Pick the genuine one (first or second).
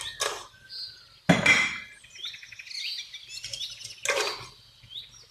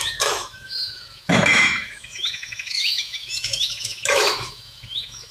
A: first